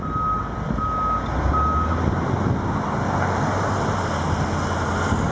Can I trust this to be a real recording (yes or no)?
yes